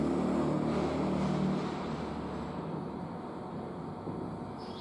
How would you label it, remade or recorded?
recorded